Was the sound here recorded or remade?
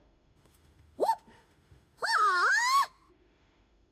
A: remade